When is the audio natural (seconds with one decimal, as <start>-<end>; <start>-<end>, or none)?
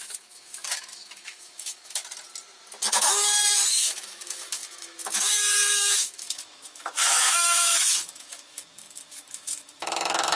2.0-2.9